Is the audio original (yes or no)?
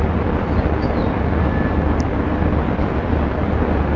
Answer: yes